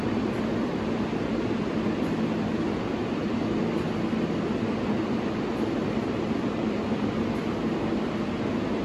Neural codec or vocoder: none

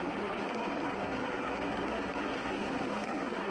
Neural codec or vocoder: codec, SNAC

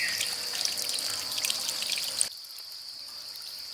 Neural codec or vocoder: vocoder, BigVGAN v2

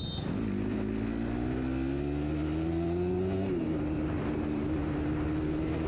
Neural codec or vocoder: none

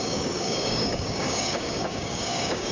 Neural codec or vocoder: codec, DAC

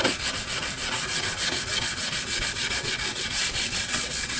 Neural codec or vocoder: vocoder, WaveNeXt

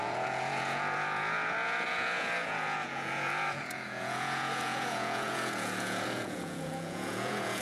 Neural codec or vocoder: vocoder, Vocos